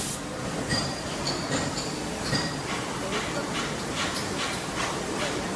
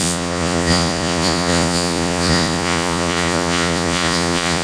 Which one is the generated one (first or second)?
second